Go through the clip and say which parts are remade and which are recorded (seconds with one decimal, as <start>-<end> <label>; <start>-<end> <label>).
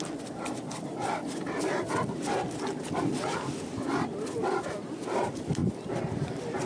0.0-6.7 recorded